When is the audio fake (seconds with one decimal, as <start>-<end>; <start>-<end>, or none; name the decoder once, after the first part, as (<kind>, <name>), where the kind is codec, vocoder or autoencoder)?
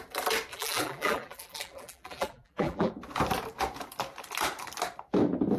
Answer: 0.5-2.9 (vocoder, BigVGAN v2)